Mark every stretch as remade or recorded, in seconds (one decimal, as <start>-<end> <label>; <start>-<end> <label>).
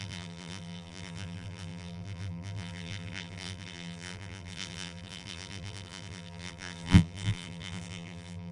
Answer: 0.0-8.5 remade